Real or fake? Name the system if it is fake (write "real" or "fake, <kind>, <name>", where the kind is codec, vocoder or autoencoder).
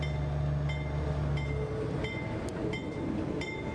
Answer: real